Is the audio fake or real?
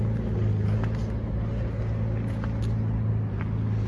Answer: real